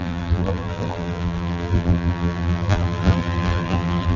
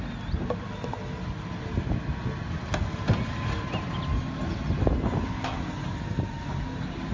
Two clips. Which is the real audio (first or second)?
second